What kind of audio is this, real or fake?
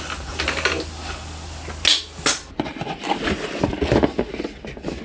real